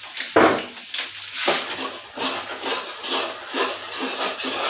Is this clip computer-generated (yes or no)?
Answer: no